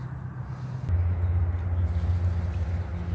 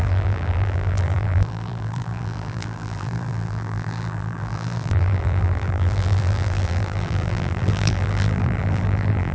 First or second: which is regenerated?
second